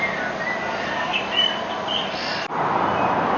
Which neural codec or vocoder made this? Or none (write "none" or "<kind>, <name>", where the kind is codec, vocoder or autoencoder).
none